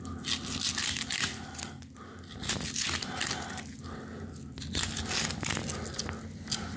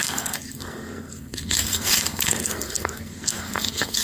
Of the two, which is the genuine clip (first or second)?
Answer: first